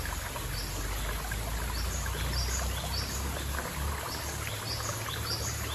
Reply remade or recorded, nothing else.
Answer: recorded